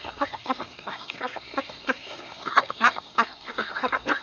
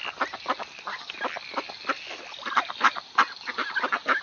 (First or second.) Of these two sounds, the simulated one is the first